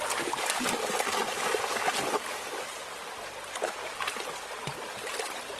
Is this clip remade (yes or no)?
no